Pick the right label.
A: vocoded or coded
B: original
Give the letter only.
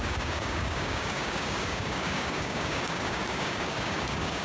A